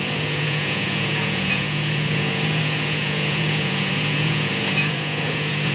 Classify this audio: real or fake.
fake